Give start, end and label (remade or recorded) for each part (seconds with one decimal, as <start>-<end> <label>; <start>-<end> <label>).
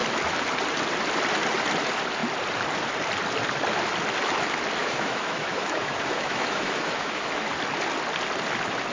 0.0-4.8 recorded; 4.8-7.5 remade; 7.5-8.9 recorded